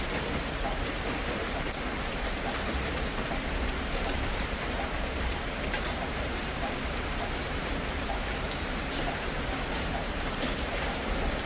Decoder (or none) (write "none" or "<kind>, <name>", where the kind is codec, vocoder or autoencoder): vocoder, BigVGAN v2